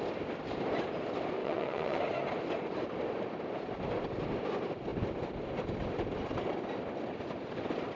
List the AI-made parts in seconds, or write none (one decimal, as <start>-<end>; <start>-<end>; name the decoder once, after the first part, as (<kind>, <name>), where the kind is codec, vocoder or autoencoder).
1.4-2.0 (vocoder, WaveNeXt)